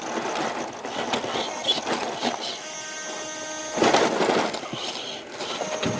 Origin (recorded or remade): recorded